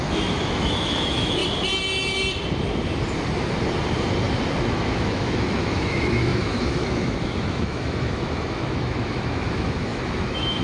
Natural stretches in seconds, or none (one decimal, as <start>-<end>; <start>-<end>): 1.4-4.6